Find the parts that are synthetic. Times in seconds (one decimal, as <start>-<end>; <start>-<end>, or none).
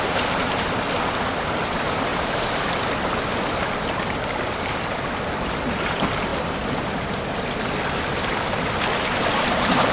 2.1-2.7